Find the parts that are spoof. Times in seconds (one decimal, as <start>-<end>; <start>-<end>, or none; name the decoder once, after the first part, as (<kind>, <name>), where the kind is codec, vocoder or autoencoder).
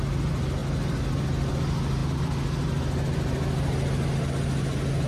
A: none